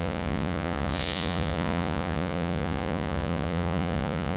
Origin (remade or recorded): remade